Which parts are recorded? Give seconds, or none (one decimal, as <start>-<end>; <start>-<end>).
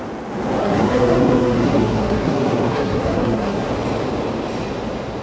0.0-0.6; 3.7-5.2